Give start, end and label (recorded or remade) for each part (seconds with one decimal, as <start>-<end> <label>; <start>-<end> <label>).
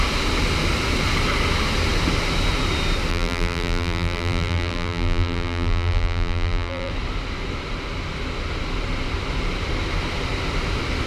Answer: 0.0-3.1 recorded; 3.1-6.9 remade; 6.9-11.1 recorded